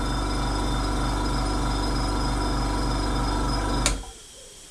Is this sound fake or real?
real